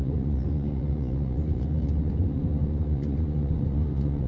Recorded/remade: remade